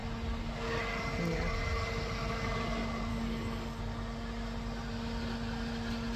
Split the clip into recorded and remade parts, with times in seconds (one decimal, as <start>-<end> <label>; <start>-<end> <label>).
0.0-3.1 recorded; 3.1-3.8 remade; 3.8-6.2 recorded